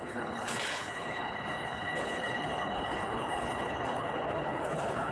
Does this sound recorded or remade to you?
remade